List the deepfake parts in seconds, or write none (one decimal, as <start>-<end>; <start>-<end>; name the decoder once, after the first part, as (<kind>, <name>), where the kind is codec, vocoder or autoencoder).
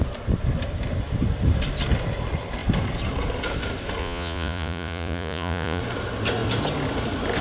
4.0-5.8 (vocoder, Vocos)